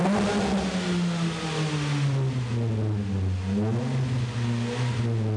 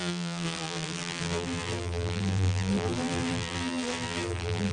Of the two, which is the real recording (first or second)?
first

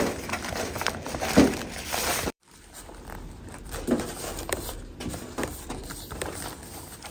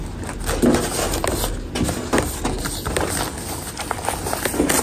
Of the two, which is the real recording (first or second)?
second